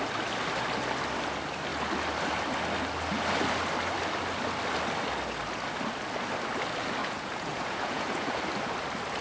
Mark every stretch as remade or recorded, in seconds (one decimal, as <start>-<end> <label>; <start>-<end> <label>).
0.0-7.0 recorded; 7.0-8.4 remade; 8.4-9.2 recorded